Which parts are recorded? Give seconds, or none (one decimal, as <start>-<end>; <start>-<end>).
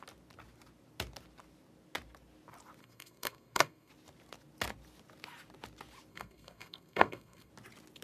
0.0-2.8; 3.9-6.1; 7.5-8.0